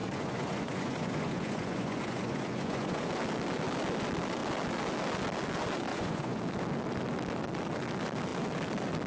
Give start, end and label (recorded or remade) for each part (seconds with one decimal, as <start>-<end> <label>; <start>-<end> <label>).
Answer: 0.0-3.1 remade; 3.1-5.9 recorded; 5.9-6.4 remade; 6.4-9.1 recorded